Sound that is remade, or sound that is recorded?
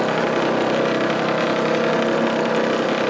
recorded